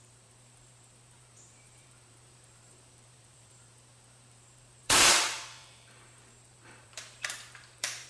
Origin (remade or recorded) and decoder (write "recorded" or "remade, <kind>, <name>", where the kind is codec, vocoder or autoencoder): remade, vocoder, BigVGAN v2